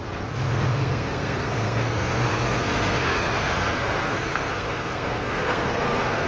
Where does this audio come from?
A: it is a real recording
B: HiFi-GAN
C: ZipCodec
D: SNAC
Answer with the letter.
D